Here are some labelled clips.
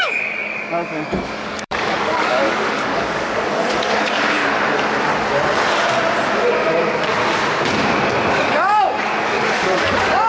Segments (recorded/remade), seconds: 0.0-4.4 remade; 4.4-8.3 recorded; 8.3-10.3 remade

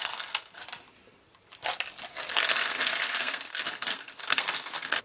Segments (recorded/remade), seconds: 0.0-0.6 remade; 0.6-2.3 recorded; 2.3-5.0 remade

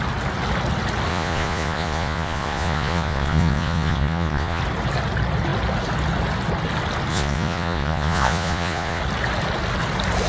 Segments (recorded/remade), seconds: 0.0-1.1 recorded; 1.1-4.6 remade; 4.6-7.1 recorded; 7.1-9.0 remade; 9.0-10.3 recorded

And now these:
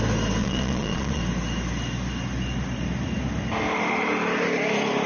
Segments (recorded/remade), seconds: 0.0-0.4 recorded; 0.4-1.2 remade; 1.2-5.1 recorded

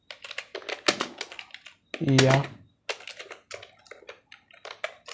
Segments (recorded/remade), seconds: 0.0-5.1 recorded